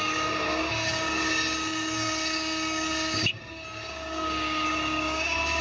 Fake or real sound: fake